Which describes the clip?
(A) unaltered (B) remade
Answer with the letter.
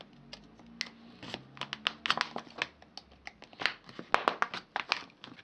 A